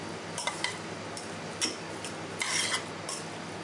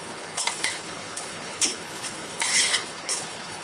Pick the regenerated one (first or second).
second